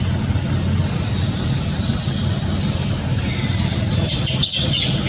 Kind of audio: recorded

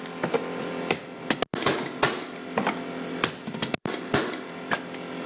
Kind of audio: recorded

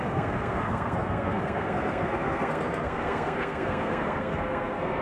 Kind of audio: remade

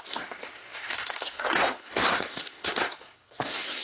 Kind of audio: remade